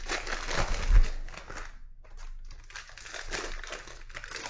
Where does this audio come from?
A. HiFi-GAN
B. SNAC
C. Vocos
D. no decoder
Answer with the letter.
D